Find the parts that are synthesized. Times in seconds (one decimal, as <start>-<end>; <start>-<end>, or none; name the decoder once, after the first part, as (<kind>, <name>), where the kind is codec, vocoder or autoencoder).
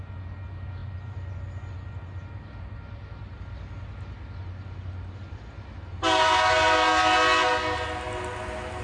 none